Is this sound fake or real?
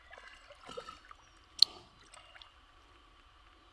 real